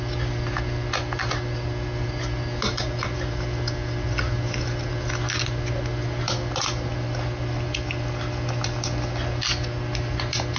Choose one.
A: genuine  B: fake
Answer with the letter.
A